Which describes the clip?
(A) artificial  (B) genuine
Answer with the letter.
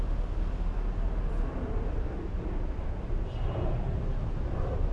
B